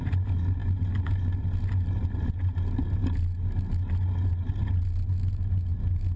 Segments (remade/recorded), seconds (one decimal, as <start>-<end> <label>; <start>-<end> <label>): 0.0-6.2 recorded